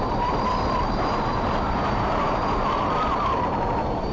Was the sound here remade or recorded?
remade